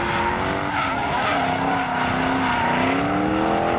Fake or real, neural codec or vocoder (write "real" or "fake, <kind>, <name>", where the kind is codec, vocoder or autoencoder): real